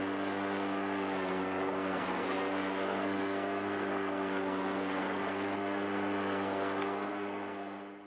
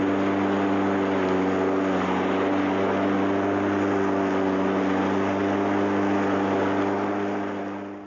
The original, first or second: second